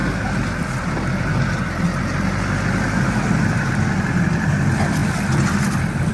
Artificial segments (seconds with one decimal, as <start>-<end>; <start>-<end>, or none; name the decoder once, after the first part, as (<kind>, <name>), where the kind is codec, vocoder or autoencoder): none